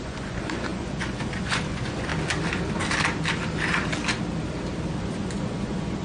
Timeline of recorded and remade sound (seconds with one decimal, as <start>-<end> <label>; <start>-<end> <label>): 0.0-2.1 remade; 2.1-5.0 recorded; 5.0-6.0 remade